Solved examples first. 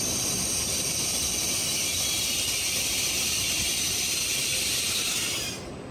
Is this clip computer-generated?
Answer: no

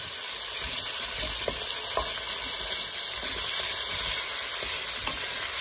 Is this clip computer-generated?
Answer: no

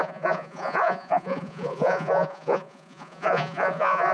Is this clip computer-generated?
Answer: yes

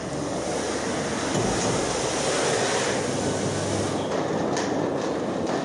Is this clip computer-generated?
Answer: no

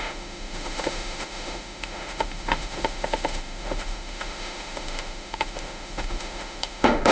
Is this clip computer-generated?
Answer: yes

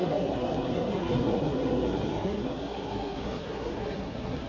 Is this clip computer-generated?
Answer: yes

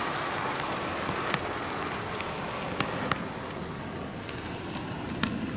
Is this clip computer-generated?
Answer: no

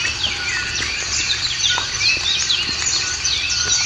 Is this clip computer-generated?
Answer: no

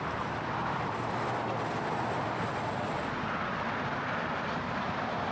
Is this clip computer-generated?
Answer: yes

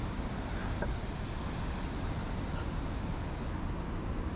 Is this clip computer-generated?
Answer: no